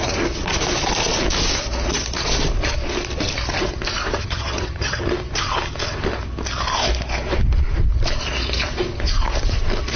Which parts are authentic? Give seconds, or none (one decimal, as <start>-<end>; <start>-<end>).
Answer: 0.0-4.2; 5.1-10.0